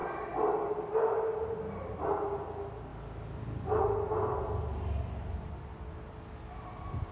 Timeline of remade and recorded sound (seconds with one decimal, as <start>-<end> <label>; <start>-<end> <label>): 0.0-7.1 recorded